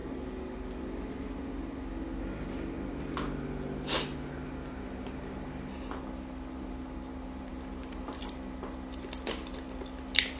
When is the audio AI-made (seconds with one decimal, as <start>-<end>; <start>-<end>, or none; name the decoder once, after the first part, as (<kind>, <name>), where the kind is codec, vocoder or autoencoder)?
none